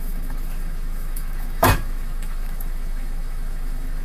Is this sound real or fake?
fake